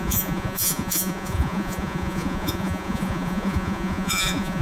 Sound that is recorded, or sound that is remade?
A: remade